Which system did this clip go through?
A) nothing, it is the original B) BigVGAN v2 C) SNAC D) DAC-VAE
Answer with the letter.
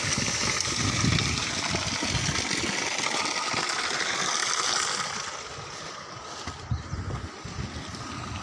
A